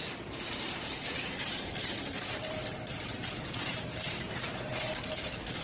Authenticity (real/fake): fake